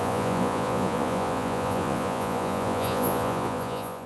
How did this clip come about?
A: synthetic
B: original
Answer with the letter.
A